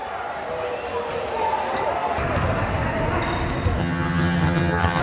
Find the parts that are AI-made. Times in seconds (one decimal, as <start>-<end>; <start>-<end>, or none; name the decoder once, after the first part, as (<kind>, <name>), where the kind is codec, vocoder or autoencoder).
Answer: 3.8-5.0 (vocoder, HiFi-GAN)